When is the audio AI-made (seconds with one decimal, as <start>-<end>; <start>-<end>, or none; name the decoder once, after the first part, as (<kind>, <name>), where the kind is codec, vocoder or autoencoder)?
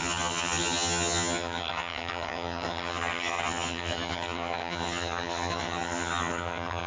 0.0-6.9 (vocoder, HiFi-GAN)